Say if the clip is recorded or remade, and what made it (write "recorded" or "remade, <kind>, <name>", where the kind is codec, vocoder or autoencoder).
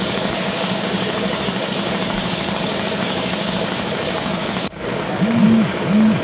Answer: remade, codec, DAC